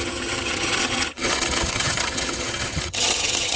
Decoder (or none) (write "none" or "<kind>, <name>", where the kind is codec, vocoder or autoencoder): vocoder, HiFi-GAN